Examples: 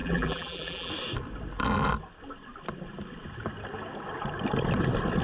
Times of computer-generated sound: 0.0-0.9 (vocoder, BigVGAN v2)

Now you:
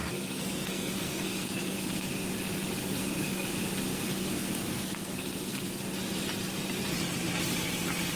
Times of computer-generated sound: 0.0-2.1 (codec, SNAC); 2.8-3.5; 3.9-5.8